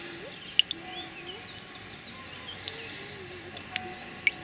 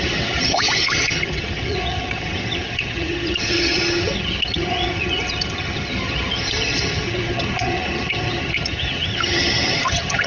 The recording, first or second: first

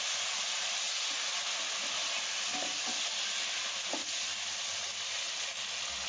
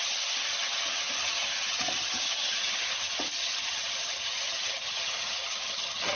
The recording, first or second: first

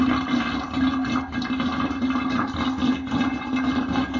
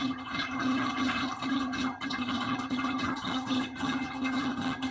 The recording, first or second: first